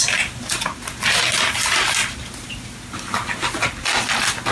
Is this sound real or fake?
real